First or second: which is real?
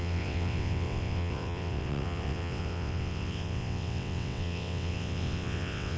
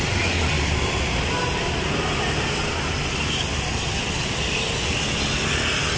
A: second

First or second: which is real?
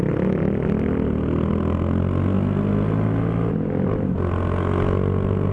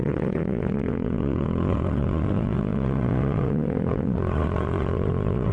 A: first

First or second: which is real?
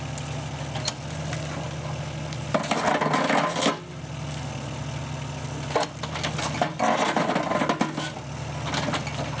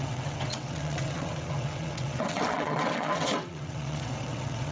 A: first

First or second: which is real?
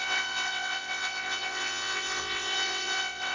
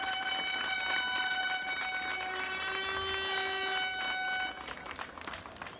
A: second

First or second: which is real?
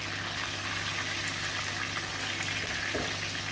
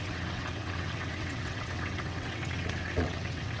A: first